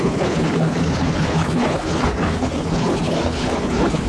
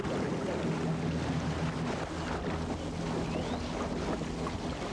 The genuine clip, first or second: second